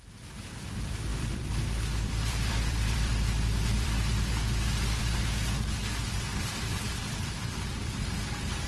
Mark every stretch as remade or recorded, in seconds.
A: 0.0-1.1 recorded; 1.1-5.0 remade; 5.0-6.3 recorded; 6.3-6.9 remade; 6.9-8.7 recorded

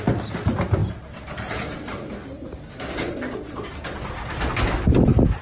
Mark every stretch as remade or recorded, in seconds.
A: 0.0-0.8 recorded; 0.8-4.0 remade; 4.0-5.4 recorded

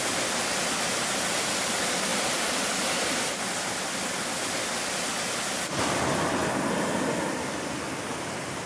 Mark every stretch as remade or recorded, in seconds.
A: 0.0-8.7 recorded

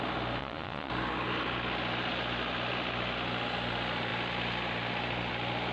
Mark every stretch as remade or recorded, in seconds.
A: 0.0-0.4 recorded; 0.4-0.9 remade; 0.9-5.7 recorded

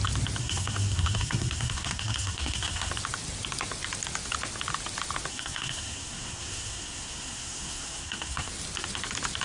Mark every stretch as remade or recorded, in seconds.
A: 0.0-0.4 recorded; 0.4-2.9 remade; 2.9-5.3 recorded; 5.3-8.5 remade; 8.5-9.4 recorded

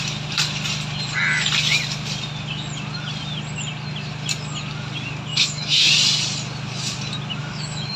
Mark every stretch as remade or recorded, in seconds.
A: 0.0-5.3 recorded; 5.3-5.9 remade; 5.9-7.4 recorded; 7.4-8.0 remade